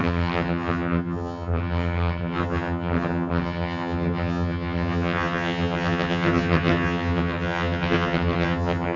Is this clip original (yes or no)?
no